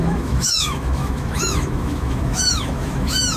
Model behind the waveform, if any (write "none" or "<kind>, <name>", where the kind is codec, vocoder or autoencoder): autoencoder, DAC-VAE